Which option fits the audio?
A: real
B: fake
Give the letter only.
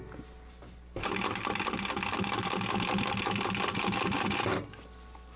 A